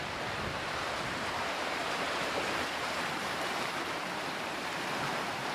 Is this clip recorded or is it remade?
remade